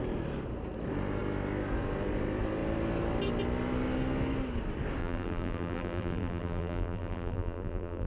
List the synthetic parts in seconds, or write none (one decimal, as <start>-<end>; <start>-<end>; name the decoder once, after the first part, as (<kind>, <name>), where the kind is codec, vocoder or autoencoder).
5.0-8.1 (vocoder, BigVGAN v2)